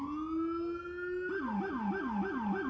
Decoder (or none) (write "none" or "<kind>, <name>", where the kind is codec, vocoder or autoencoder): none